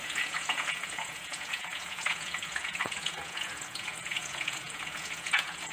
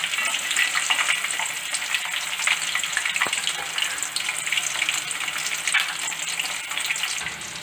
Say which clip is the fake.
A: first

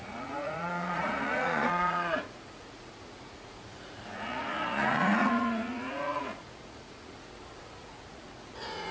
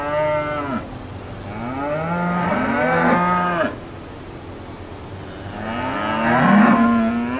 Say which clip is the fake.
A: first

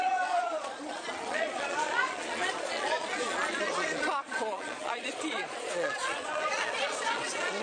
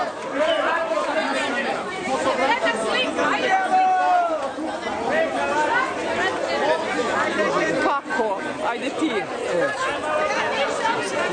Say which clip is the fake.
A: first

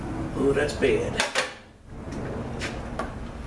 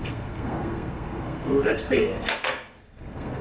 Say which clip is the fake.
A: second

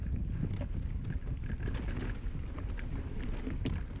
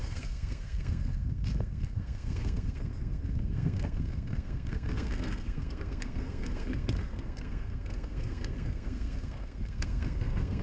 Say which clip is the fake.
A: second